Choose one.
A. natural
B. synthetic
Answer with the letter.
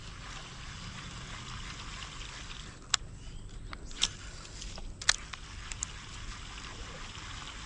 A